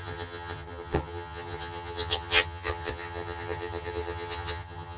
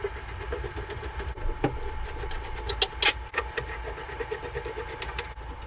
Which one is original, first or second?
second